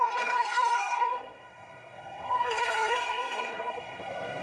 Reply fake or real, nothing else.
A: fake